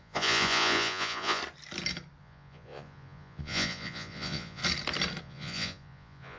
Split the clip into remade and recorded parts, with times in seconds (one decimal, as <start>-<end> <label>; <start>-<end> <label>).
0.0-1.4 remade; 1.4-2.2 recorded; 2.2-4.6 remade; 4.6-5.2 recorded; 5.2-6.4 remade